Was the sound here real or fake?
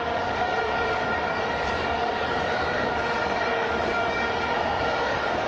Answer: fake